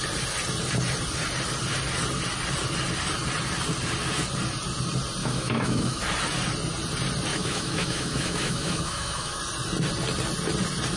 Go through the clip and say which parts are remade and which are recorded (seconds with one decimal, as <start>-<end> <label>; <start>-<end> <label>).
0.0-5.2 recorded; 5.2-6.0 remade; 6.0-7.3 recorded; 7.3-9.4 remade; 9.4-11.0 recorded